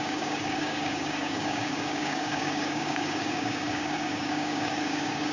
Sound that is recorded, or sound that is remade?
remade